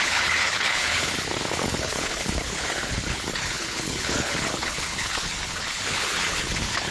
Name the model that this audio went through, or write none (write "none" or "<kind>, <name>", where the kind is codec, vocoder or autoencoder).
codec, HILCodec